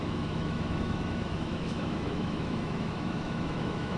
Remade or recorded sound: remade